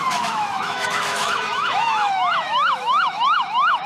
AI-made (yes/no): yes